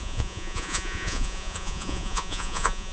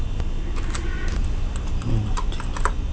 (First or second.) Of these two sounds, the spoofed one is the first